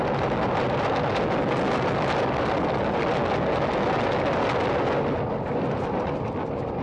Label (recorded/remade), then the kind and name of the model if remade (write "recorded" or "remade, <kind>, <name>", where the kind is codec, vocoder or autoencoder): recorded